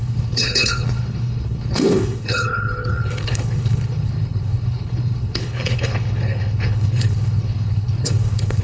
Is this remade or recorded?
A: remade